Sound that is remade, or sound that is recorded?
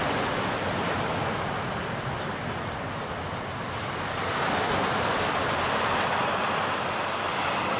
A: recorded